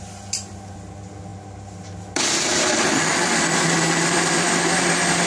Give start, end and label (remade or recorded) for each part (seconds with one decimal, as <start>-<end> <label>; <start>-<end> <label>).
0.0-5.3 recorded